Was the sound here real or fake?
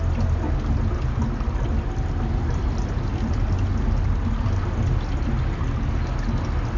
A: real